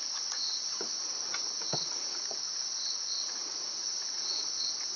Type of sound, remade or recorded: remade